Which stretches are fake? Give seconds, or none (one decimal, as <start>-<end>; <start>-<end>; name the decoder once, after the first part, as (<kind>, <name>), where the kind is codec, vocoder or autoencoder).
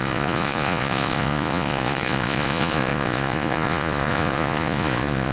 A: 0.0-5.3 (vocoder, Vocos)